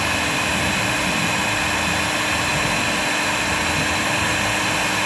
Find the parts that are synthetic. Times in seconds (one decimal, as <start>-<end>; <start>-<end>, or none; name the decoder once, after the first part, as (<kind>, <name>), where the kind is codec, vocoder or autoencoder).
none